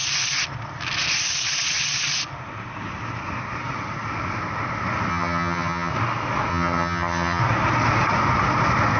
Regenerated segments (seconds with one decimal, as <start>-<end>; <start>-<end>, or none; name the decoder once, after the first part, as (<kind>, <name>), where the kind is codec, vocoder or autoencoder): 5.1-5.9 (vocoder, HiFi-GAN); 6.5-7.4